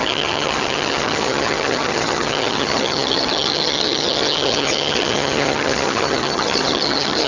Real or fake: fake